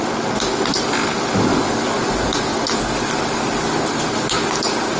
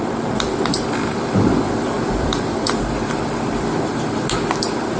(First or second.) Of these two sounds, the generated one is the second